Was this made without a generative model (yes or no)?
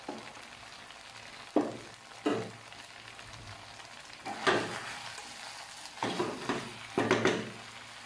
yes